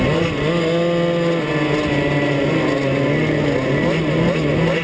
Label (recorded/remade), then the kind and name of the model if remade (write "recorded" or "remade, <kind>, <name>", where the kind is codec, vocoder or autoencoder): recorded